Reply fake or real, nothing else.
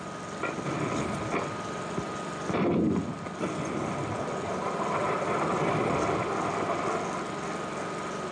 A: real